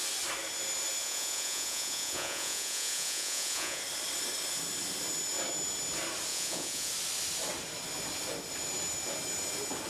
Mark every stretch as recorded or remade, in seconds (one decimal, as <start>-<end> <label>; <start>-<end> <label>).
0.0-1.0 recorded; 1.0-3.8 remade; 3.8-6.3 recorded; 6.3-6.9 remade; 6.9-9.9 recorded